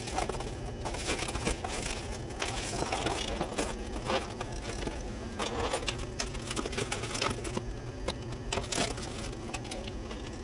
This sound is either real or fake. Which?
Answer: real